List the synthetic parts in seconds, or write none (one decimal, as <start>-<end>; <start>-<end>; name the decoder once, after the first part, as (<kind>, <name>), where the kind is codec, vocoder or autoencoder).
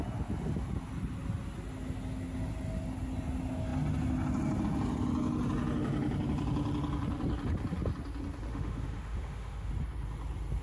8.5-9.7 (autoencoder, DAC-VAE)